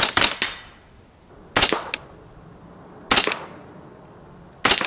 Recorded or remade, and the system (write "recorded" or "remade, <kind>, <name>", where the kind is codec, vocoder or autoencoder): recorded